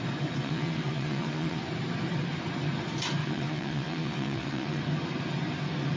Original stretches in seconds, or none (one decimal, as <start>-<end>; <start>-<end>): 0.0-0.4; 1.6-3.2; 4.8-6.0